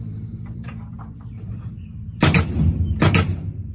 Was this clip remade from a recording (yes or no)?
yes